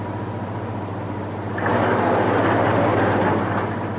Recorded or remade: recorded